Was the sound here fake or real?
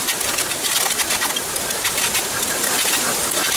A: real